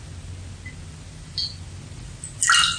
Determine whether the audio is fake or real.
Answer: real